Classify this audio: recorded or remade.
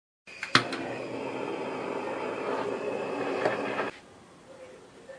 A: recorded